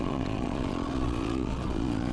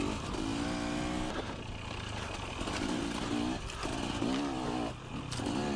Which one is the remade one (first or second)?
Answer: first